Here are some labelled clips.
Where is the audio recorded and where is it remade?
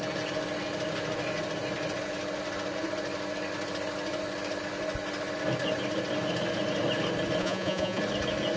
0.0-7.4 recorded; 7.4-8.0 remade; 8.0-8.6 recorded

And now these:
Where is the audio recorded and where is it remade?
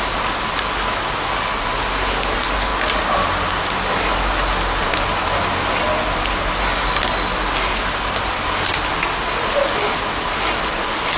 0.0-11.2 recorded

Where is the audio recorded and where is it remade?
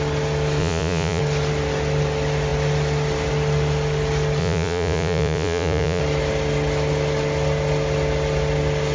0.0-0.6 recorded; 0.6-1.2 remade; 1.2-4.4 recorded; 4.4-6.0 remade; 6.0-8.9 recorded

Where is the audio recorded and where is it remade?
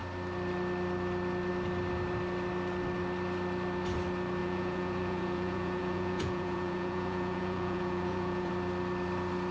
0.0-4.4 recorded; 4.4-8.5 remade; 8.5-9.5 recorded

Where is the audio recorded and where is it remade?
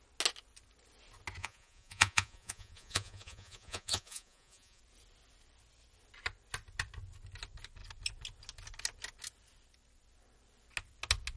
0.0-1.4 recorded; 1.4-4.8 remade; 4.8-11.4 recorded